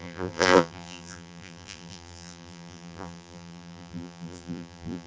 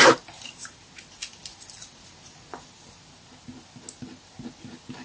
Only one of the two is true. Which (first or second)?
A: second